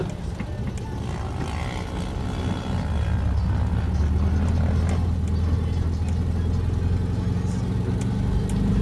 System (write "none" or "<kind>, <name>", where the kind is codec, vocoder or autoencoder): none